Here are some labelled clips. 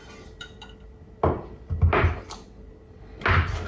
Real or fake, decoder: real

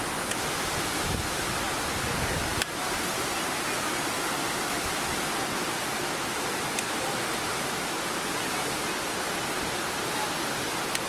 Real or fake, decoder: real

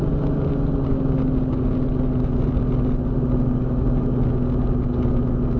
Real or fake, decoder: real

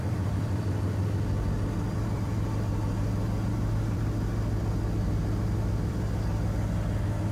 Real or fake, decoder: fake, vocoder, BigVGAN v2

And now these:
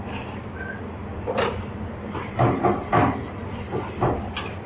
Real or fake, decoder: fake, vocoder, BigVGAN v2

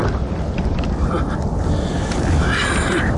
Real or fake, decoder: real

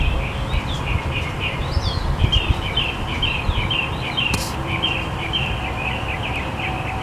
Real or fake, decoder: fake, vocoder, BigVGAN v2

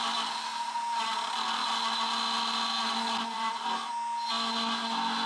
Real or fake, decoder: real